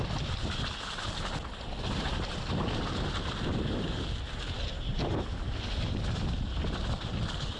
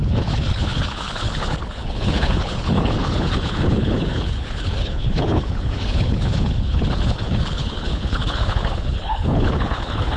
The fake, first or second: second